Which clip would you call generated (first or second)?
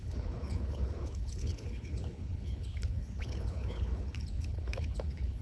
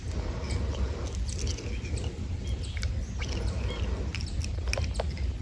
first